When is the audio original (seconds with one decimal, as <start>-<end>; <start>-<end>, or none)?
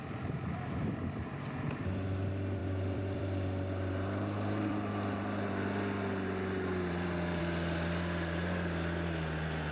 0.0-2.6; 7.4-9.7